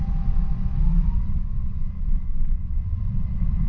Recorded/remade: remade